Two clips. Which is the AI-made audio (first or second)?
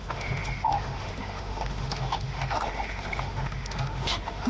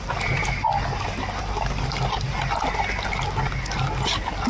first